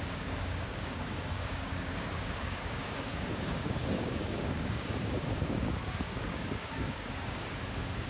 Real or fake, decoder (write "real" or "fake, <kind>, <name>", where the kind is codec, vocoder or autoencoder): fake, codec, DAC